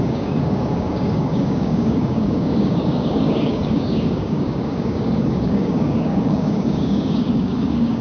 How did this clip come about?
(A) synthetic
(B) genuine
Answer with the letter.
A